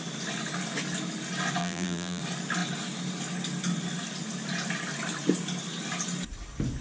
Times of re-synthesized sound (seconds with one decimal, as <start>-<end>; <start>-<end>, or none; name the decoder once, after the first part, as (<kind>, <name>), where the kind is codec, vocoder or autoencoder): 1.6-2.2 (vocoder, BigVGAN v2)